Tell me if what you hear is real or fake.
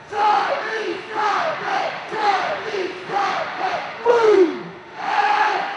fake